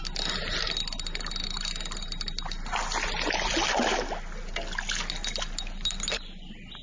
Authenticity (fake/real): real